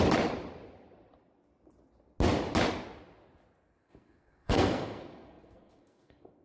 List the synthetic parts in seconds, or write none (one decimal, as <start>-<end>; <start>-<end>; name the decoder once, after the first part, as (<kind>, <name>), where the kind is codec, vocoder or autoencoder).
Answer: 3.8-6.4 (codec, SNAC)